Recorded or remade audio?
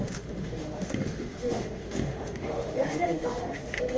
remade